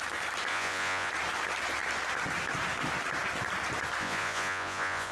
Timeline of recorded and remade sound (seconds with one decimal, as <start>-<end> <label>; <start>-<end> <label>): 0.0-0.5 recorded; 0.5-1.1 remade; 1.1-4.0 recorded; 4.0-5.1 remade